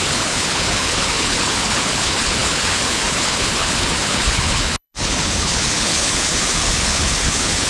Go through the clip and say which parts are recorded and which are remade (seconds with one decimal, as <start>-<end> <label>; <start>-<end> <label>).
0.0-7.7 remade